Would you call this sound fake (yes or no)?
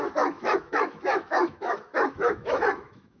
yes